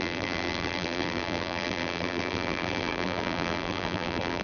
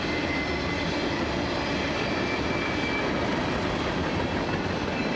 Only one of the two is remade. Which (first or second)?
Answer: first